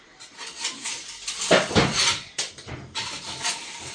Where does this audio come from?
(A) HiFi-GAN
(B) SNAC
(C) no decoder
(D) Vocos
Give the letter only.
C